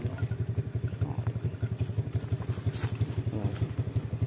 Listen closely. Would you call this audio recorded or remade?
recorded